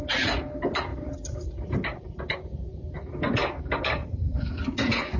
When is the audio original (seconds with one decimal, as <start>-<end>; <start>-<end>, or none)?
0.0-0.9; 2.2-4.0; 4.5-5.2